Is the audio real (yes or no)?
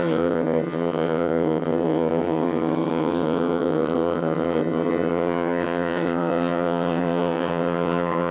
no